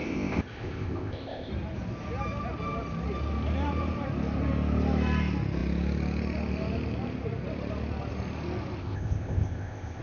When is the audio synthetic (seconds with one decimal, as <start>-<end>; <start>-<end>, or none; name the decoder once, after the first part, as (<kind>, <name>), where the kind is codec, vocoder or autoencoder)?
0.0-1.5 (codec, ZipCodec); 8.8-10.0